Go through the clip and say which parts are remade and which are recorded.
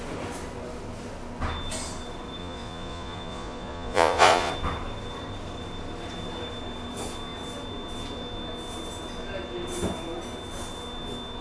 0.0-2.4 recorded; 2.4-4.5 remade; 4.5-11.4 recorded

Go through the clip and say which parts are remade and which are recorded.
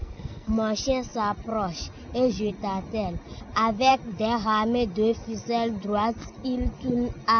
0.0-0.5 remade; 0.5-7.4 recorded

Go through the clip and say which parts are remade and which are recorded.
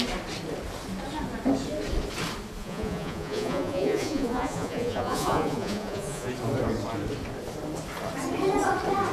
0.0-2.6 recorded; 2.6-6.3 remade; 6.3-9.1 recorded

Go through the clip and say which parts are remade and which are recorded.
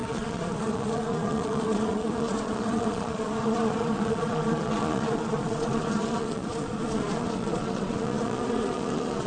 0.0-9.3 remade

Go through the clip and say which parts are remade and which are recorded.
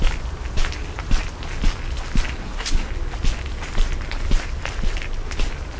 0.0-2.4 recorded; 2.4-2.9 remade; 2.9-5.8 recorded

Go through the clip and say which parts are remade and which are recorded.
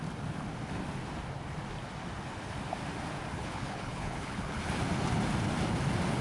0.0-3.3 recorded; 3.3-4.6 remade; 4.6-6.2 recorded